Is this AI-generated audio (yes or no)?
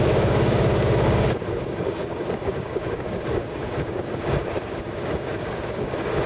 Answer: yes